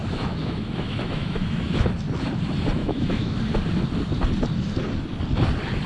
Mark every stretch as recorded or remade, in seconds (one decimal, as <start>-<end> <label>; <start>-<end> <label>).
0.0-1.9 remade; 1.9-2.8 recorded; 2.8-3.4 remade; 3.4-5.9 recorded